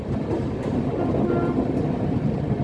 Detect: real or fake real